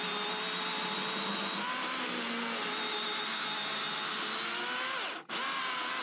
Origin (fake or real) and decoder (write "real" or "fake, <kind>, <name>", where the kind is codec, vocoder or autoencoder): real